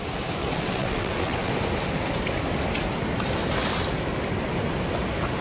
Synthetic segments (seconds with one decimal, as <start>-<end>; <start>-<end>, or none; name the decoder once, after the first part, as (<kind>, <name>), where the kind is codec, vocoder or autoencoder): 0.4-1.5 (vocoder, WaveNeXt)